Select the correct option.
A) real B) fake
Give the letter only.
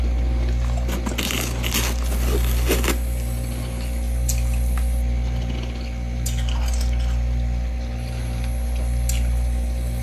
A